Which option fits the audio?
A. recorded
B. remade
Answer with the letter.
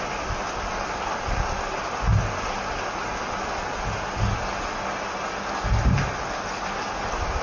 A